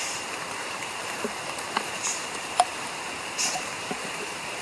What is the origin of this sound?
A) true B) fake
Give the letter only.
B